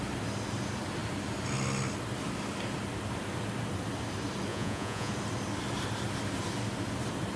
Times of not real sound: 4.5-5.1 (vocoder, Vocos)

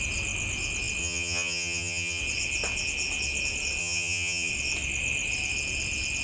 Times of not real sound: 1.0-2.2 (vocoder, HiFi-GAN); 3.8-4.5

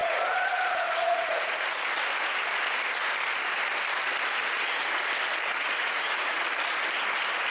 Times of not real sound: 0.0-1.7 (vocoder, Vocos); 5.5-6.4